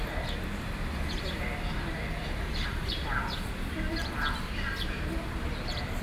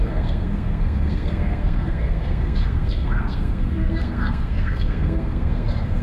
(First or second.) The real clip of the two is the first